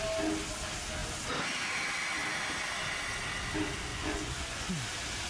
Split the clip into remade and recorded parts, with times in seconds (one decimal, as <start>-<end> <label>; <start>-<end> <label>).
0.0-3.9 recorded; 3.9-4.7 remade; 4.7-5.3 recorded